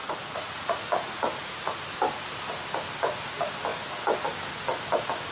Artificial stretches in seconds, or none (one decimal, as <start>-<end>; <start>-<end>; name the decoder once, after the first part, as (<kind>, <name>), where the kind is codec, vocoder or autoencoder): 0.0-1.8 (vocoder, Vocos)